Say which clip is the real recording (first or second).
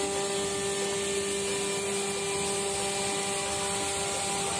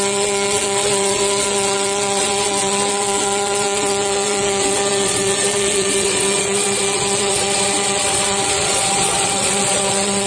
first